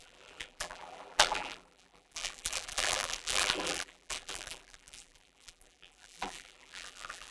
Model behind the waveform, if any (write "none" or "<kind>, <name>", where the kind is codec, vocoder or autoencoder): vocoder, BigVGAN v2